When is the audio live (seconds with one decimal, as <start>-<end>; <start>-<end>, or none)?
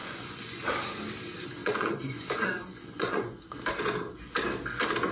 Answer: 0.6-1.6; 3.4-5.1